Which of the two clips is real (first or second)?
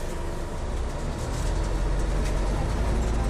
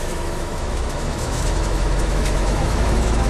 first